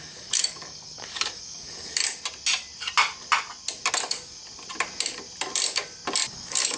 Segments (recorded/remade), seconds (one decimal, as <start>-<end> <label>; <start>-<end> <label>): 0.0-2.0 remade; 2.0-3.9 recorded; 3.9-4.4 remade; 4.4-6.3 recorded; 6.3-6.8 remade